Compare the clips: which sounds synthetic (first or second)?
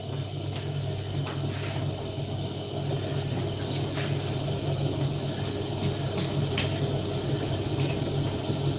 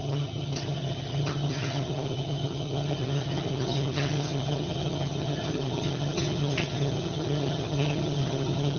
second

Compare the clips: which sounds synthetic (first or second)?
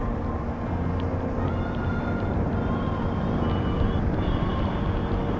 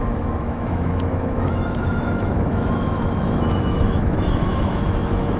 second